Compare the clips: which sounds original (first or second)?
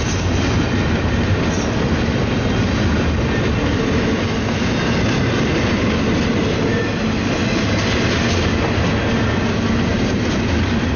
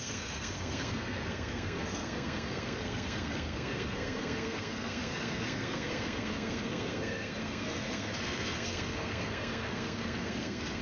first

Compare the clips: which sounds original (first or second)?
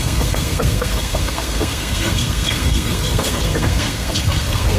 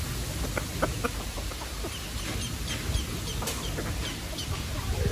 second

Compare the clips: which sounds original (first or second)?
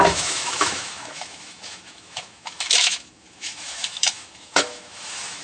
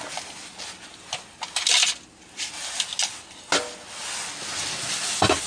second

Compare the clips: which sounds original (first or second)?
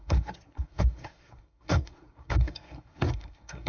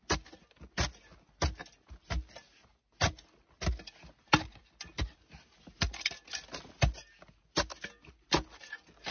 second